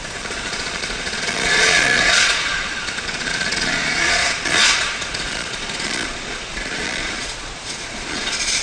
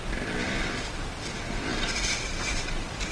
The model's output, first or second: first